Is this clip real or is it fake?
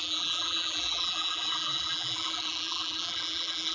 fake